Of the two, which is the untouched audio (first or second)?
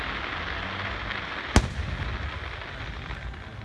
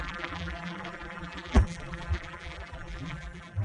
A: first